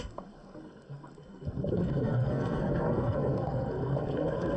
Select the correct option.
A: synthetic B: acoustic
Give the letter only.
A